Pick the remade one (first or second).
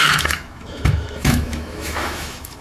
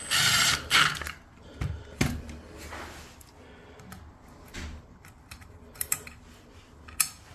first